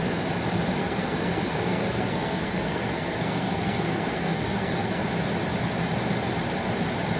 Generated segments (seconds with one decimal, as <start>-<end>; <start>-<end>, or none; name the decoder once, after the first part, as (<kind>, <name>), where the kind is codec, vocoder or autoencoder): 0.8-5.0 (codec, SNAC)